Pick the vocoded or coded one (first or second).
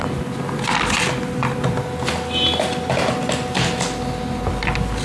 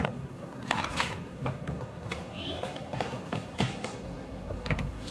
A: second